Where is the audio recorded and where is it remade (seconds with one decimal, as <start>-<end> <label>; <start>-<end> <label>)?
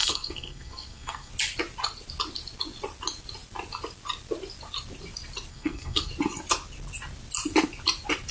0.0-1.3 remade; 1.3-5.5 recorded; 5.5-6.1 remade; 6.1-8.3 recorded